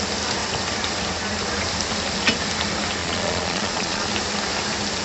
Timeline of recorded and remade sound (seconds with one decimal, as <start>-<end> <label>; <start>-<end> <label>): 0.0-3.0 recorded; 3.0-4.1 remade; 4.1-5.0 recorded